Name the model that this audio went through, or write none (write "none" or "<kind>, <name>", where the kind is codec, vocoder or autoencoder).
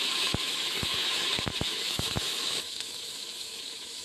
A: autoencoder, DAC-VAE